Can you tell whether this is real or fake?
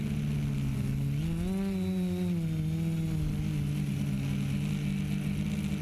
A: real